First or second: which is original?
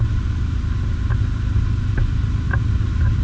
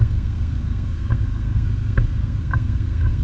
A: first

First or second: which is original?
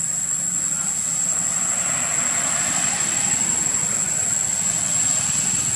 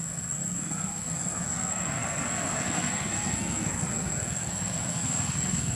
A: first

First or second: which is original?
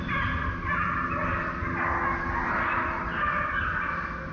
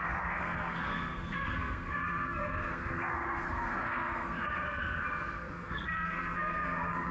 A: first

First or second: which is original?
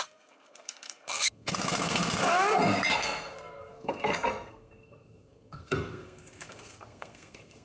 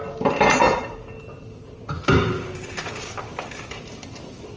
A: second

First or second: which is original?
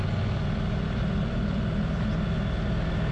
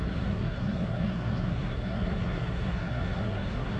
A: first